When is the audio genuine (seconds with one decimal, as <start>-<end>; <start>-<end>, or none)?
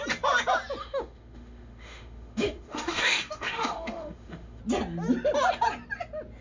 0.0-0.8; 4.6-6.4